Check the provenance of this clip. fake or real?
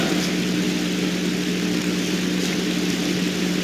real